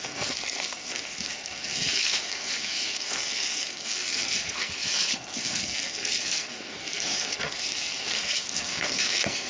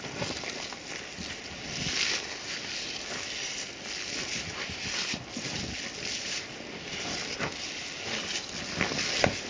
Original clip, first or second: second